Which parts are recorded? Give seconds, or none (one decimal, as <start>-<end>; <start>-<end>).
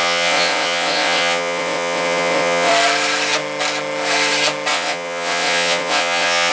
2.7-4.7